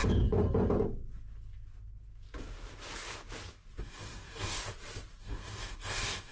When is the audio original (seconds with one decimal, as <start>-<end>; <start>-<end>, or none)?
0.0-3.8; 4.6-5.2